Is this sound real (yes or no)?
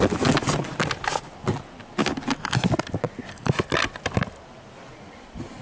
yes